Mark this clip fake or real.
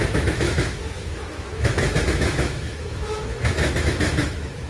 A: fake